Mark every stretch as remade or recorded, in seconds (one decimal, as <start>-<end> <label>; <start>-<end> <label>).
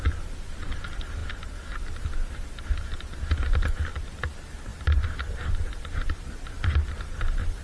0.0-7.6 recorded